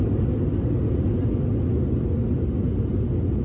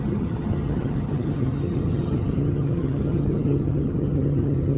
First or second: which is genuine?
first